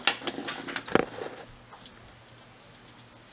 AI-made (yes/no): no